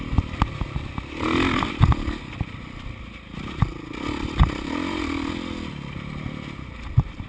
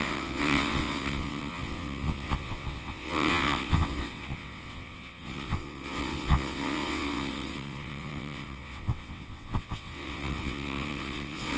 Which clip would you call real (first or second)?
first